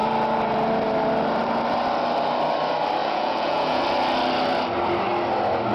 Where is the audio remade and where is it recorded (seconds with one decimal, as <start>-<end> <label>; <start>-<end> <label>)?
0.0-3.0 recorded; 3.0-3.8 remade; 3.8-5.7 recorded